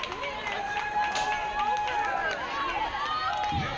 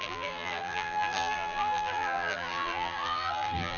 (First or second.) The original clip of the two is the first